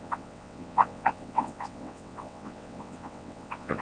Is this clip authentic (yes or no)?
no